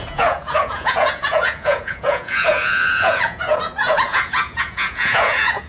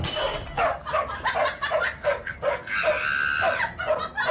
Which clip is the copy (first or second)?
first